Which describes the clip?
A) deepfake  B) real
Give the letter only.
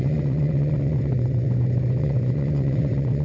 A